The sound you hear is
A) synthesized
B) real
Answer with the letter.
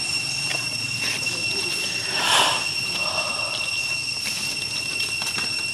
B